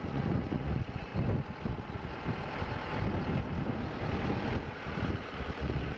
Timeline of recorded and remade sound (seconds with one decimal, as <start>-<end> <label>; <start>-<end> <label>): 0.0-1.1 remade; 1.1-1.7 recorded; 1.7-2.1 remade; 2.1-4.7 recorded; 4.7-6.0 remade